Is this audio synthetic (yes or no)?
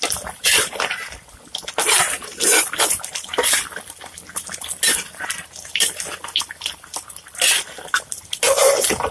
no